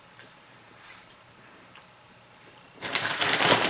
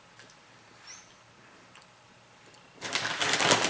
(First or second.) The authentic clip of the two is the second